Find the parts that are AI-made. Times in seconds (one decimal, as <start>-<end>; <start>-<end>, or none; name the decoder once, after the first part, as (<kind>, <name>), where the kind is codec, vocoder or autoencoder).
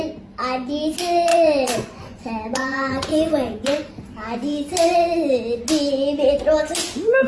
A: 1.3-3.9 (vocoder, Vocos)